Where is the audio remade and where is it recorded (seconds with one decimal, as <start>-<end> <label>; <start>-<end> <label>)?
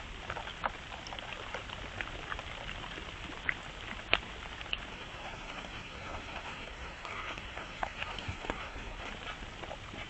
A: 0.0-4.9 recorded; 4.9-9.1 remade; 9.1-10.1 recorded